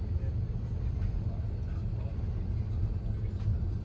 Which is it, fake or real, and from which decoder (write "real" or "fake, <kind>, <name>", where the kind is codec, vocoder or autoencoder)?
real